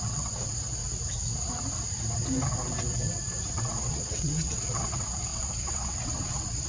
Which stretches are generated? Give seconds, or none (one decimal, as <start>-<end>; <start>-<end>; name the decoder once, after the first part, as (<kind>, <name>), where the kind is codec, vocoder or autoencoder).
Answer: 0.0-0.8 (vocoder, WaveNeXt); 3.5-6.7